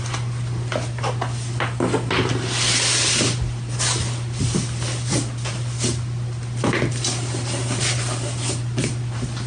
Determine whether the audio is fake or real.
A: real